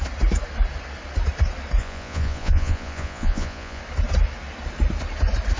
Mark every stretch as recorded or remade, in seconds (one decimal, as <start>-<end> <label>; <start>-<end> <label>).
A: 0.0-1.8 recorded; 1.8-3.8 remade; 3.8-5.6 recorded